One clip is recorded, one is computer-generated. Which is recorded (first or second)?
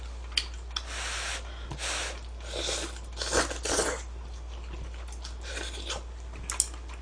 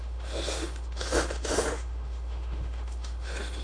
first